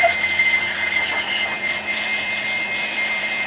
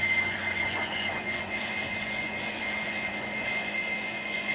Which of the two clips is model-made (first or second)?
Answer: second